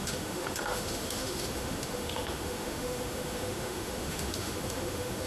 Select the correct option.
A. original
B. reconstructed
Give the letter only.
B